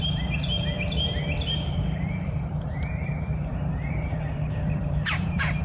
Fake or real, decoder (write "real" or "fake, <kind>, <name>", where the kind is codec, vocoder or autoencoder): fake, vocoder, BigVGAN v2